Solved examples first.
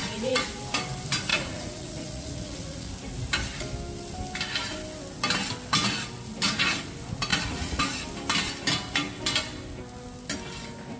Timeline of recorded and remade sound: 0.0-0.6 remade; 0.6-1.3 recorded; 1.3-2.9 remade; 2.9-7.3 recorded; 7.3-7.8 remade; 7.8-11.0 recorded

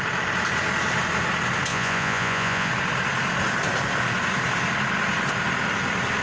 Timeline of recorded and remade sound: 0.0-1.7 recorded; 1.7-2.7 remade; 2.7-6.2 recorded

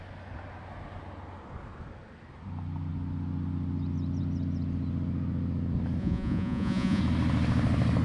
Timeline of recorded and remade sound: 0.0-6.0 recorded; 6.0-7.0 remade; 7.0-8.0 recorded

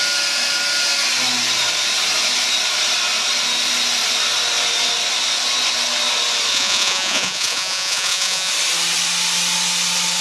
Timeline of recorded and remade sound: 0.0-6.5 recorded; 6.5-8.5 remade; 8.5-10.2 recorded

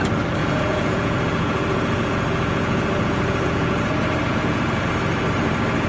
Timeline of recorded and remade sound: 0.0-0.4 recorded; 0.4-3.9 remade; 3.9-4.3 recorded; 4.3-4.9 remade; 4.9-5.9 recorded

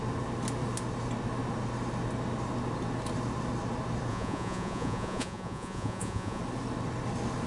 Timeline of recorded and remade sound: 0.0-4.1 recorded; 4.1-6.4 remade; 6.4-7.5 recorded

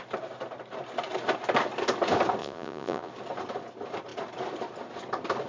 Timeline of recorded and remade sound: 0.0-2.4 recorded; 2.4-3.1 remade; 3.1-5.5 recorded

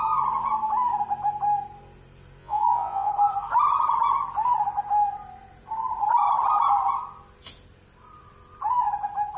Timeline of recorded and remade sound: 0.0-2.4 recorded; 2.4-3.1 remade; 3.1-9.4 recorded